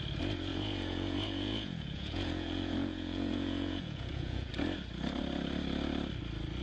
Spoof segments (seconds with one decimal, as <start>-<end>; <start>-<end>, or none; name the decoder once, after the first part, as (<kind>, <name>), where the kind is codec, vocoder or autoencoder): 0.5-4.5 (vocoder, Vocos)